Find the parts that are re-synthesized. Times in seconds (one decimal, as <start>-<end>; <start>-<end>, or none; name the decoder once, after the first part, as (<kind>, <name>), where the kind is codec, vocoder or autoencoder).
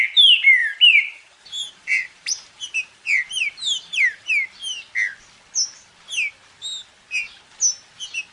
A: 0.6-4.3 (vocoder, BigVGAN v2)